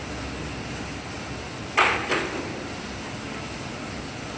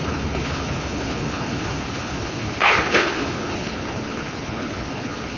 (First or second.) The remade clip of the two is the second